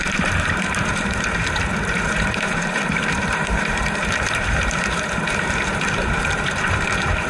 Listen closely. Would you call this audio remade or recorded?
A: remade